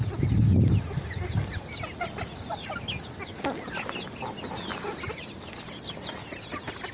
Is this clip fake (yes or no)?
no